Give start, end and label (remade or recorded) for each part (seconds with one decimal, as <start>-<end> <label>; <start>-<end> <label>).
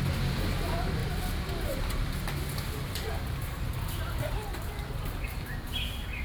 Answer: 0.0-4.5 recorded; 4.5-5.1 remade; 5.1-6.2 recorded